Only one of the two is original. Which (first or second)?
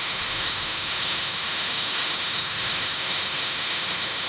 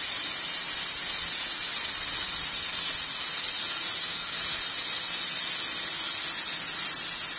second